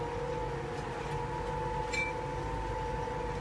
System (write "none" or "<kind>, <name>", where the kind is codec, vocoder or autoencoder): none